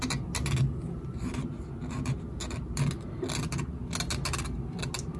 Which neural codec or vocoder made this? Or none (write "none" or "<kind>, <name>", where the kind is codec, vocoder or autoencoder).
none